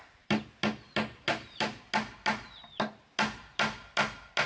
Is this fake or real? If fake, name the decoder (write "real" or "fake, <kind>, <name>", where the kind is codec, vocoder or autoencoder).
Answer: real